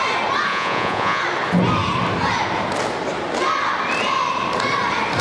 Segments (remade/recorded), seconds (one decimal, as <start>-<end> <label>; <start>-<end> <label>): 0.0-0.5 recorded; 0.5-1.2 remade; 1.2-5.2 recorded